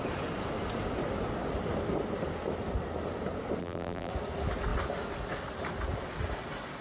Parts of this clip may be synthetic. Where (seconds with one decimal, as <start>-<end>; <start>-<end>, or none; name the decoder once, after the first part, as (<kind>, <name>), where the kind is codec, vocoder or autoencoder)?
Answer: 3.6-4.1 (vocoder, BigVGAN v2)